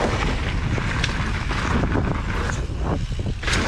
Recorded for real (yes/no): yes